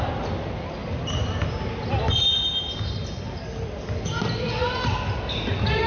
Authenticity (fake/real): real